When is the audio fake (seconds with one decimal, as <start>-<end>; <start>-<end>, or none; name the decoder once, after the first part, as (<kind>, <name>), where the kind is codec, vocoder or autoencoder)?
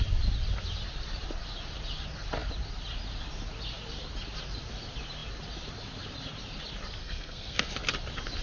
7.0-7.7 (codec, SNAC)